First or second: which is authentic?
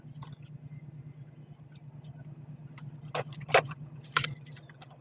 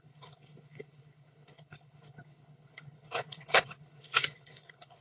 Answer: first